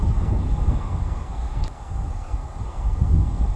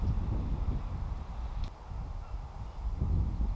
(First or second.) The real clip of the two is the second